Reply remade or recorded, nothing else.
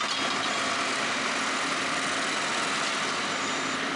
recorded